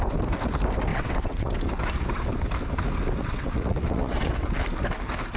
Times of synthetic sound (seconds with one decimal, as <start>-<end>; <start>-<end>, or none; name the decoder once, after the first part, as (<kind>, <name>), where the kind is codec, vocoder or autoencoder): 0.9-1.5 (vocoder, WaveNeXt); 3.2-4.5